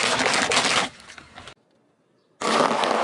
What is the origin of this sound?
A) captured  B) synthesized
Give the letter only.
A